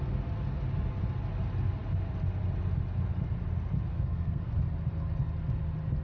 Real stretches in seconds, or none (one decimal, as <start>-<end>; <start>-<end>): 0.0-3.9; 4.5-6.0